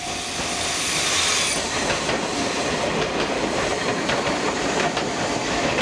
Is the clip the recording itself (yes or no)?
no